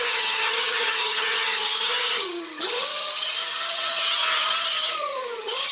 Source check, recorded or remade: remade